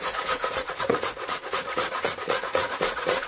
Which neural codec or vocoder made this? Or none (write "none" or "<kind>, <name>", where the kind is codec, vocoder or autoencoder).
vocoder, Vocos